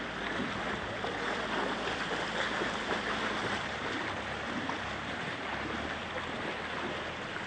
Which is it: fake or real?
real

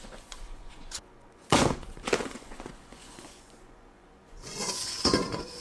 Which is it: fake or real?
fake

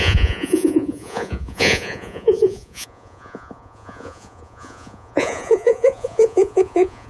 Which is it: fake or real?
fake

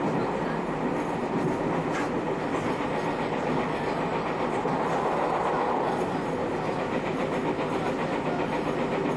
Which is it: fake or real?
real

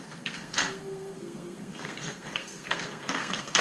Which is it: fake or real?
fake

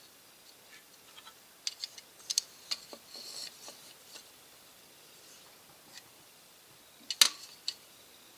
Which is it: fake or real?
real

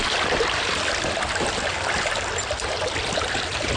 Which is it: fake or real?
fake